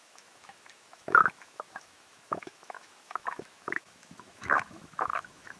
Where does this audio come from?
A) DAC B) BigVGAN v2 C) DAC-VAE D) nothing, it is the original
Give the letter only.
C